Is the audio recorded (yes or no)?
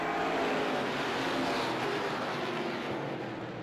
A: yes